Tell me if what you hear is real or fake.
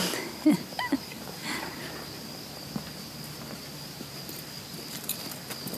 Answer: real